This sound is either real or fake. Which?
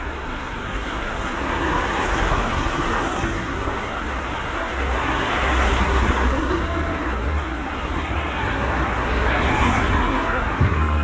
fake